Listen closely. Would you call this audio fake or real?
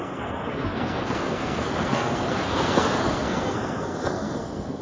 fake